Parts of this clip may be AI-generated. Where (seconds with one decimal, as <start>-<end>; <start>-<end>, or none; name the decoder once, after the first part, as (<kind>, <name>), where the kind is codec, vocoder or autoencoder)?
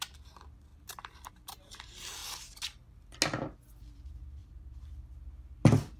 0.7-1.3 (vocoder, BigVGAN v2); 4.4-4.9